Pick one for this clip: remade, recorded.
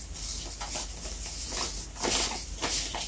recorded